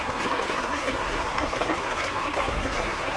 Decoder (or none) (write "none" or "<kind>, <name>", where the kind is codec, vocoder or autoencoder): codec, SNAC